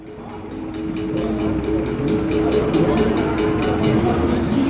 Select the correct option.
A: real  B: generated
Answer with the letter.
A